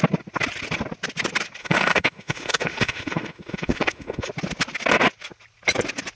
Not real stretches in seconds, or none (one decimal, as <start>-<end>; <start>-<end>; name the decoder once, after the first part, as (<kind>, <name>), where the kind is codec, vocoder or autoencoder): 1.6-4.3 (autoencoder, DAC-VAE)